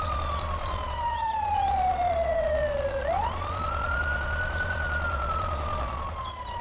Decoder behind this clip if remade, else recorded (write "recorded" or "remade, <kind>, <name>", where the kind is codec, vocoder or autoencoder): remade, vocoder, Vocos